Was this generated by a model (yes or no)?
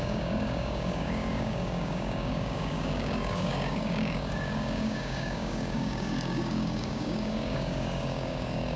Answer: yes